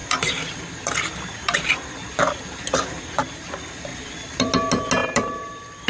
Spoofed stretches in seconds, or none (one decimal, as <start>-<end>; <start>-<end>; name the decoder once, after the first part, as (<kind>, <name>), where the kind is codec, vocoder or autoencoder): 0.0-3.5 (vocoder, BigVGAN v2); 3.9-4.5; 5.0-5.9